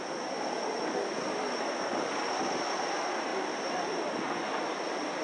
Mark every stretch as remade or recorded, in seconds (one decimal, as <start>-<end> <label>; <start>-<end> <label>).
0.0-5.2 recorded